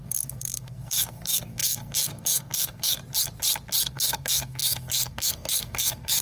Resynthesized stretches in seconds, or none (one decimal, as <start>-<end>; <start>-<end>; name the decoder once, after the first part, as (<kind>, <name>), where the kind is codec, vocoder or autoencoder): 0.0-3.0 (codec, SNAC); 3.9-6.2